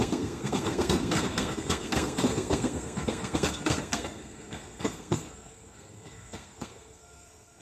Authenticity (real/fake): fake